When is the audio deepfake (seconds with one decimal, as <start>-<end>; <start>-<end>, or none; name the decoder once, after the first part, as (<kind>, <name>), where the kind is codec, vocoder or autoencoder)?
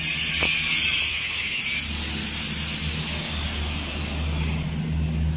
1.1-1.6 (autoencoder, DAC-VAE)